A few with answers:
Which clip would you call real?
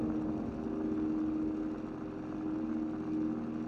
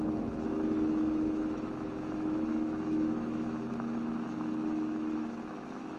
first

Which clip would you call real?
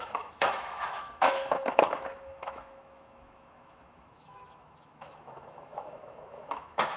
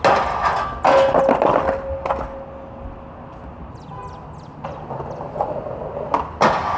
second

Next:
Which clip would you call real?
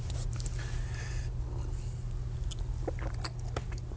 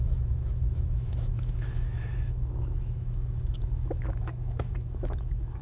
first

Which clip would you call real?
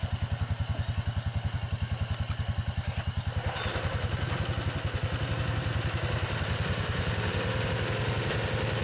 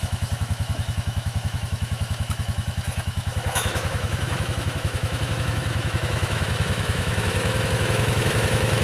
first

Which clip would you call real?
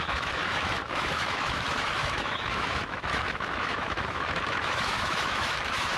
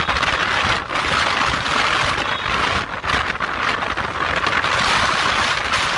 second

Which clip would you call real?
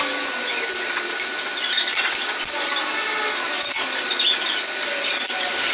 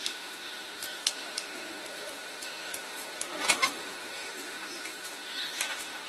first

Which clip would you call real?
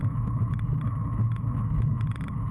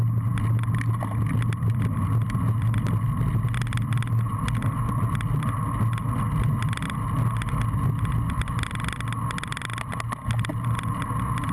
second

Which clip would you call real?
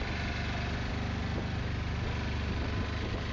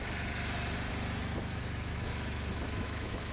first